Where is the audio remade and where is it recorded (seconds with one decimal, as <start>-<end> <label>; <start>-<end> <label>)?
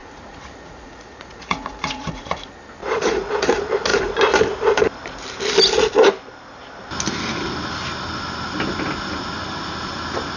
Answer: 0.0-2.3 remade; 2.3-2.8 recorded; 2.8-3.3 remade; 3.3-10.4 recorded